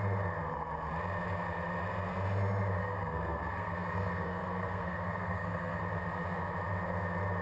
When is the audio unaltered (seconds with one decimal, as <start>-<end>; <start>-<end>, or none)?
0.0-2.8; 5.8-7.4